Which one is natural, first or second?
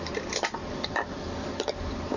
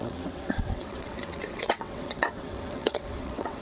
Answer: first